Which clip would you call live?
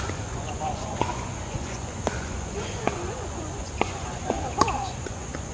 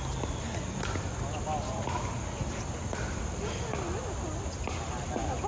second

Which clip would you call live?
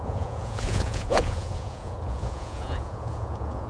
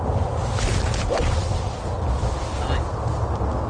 second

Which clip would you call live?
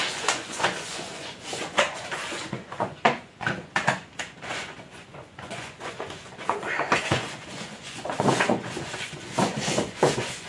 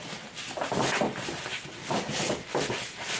second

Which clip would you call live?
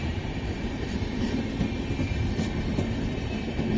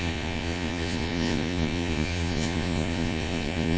first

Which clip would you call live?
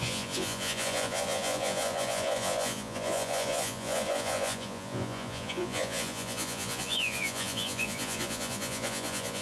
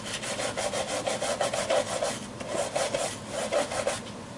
second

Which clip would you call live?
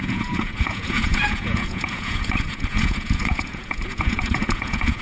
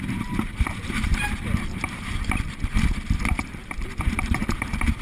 second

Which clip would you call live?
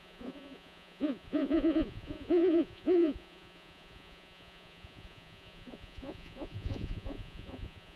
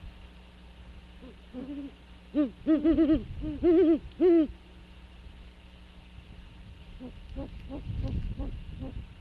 second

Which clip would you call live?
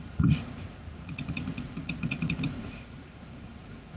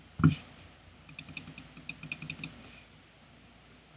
second